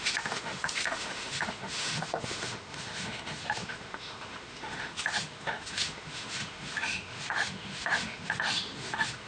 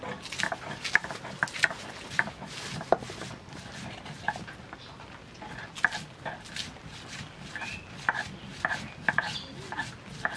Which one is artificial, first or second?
first